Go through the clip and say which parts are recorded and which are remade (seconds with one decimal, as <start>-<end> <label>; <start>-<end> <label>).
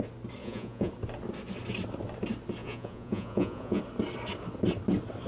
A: 0.0-0.4 recorded; 0.4-0.9 remade; 0.9-2.6 recorded; 2.6-3.8 remade; 3.8-5.3 recorded